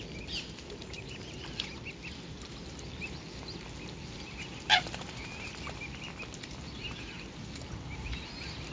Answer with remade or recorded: recorded